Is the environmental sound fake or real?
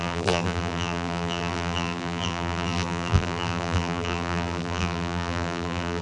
fake